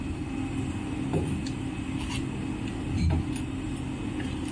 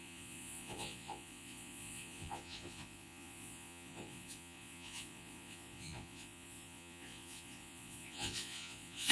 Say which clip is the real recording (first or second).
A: first